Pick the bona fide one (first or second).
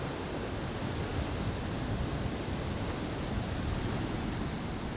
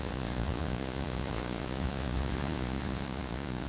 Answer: first